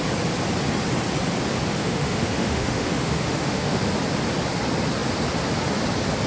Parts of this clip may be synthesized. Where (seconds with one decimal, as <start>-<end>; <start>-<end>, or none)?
1.8-3.8